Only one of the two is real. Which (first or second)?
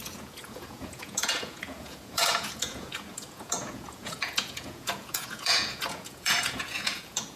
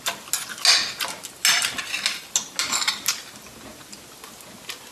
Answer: second